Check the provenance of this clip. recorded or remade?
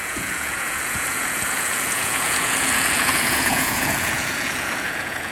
remade